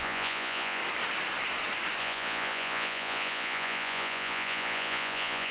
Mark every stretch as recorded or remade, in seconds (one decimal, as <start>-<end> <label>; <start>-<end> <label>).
0.0-0.8 remade; 0.8-2.0 recorded; 2.0-5.5 remade